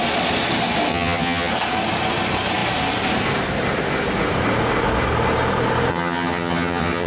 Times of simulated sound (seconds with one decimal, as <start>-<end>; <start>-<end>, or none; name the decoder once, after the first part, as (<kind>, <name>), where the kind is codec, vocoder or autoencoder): 0.9-1.5 (vocoder, HiFi-GAN); 5.9-7.1